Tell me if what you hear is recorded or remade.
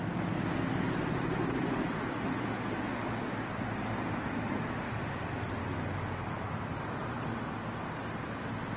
recorded